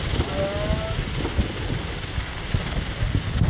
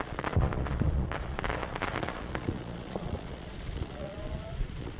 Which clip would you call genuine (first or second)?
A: first